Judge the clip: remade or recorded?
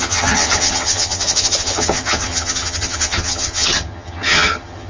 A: remade